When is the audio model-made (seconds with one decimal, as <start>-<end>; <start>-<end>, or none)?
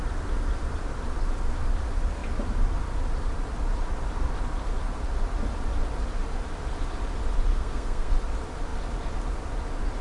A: 7.5-8.1